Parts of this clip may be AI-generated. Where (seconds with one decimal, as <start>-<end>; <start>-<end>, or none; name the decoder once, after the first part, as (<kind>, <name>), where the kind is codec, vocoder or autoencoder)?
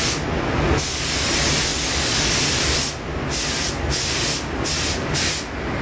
none